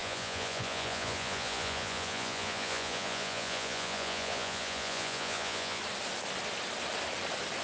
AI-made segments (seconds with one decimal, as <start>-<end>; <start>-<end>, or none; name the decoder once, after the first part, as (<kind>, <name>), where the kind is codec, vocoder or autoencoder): 0.0-5.8 (vocoder, Vocos)